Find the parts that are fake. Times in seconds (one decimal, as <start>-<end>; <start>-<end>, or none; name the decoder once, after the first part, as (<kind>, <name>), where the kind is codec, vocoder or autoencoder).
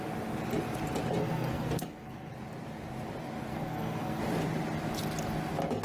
1.2-2.3 (codec, SNAC); 3.5-4.2